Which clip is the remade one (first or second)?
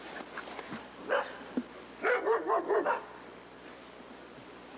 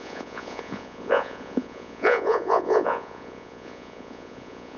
second